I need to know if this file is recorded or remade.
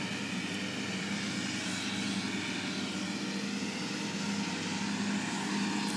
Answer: recorded